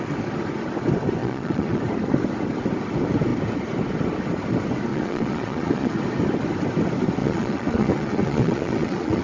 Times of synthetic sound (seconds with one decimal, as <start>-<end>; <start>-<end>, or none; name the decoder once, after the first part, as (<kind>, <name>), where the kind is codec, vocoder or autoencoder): 1.2-1.8 (vocoder, Vocos); 4.9-6.0; 7.2-9.2